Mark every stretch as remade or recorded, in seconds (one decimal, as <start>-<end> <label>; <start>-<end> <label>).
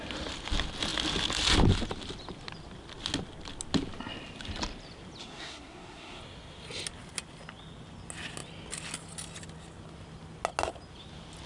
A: 0.0-5.2 recorded; 5.2-6.2 remade; 6.2-11.5 recorded